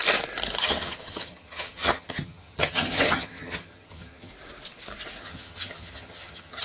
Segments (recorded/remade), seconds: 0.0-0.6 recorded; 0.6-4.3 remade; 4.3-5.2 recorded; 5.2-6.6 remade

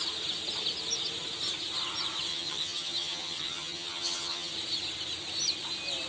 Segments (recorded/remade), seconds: 0.0-2.3 recorded; 2.3-4.5 remade; 4.5-6.1 recorded

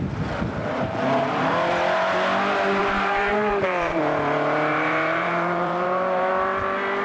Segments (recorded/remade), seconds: 0.0-0.6 recorded; 0.6-1.7 remade; 1.7-2.8 recorded; 2.8-4.0 remade; 4.0-4.7 recorded; 4.7-6.3 remade; 6.3-7.0 recorded